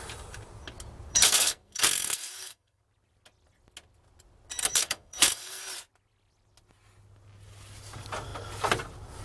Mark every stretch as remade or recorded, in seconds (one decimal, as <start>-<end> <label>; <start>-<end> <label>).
0.0-1.1 recorded; 1.1-2.8 remade; 2.8-4.6 recorded; 4.6-5.6 remade; 5.6-9.2 recorded